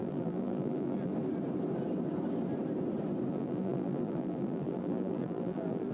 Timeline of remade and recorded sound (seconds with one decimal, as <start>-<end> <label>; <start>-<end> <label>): 0.0-1.1 remade; 1.1-3.3 recorded; 3.3-5.9 remade